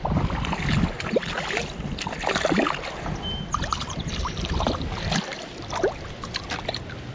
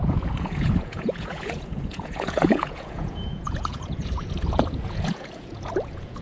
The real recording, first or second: first